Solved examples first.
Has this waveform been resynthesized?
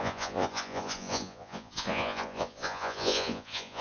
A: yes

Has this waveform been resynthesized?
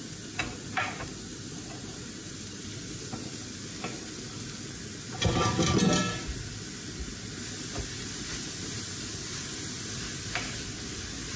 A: no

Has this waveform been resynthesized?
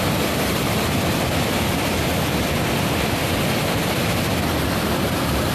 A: no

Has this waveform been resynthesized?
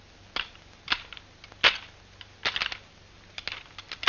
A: no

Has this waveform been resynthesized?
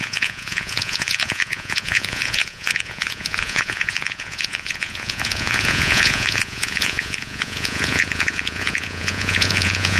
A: yes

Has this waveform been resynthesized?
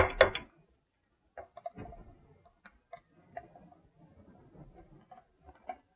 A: no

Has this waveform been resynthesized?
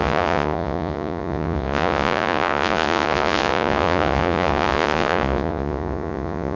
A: yes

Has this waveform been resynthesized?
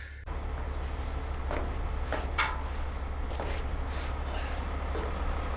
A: no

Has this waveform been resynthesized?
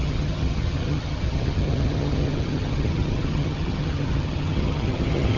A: yes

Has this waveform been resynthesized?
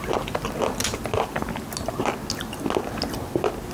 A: no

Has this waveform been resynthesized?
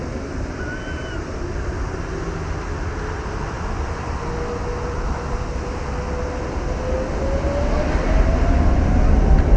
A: no